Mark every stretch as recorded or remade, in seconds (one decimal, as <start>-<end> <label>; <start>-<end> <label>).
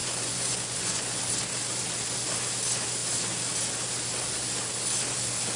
0.0-1.2 remade; 1.2-5.6 recorded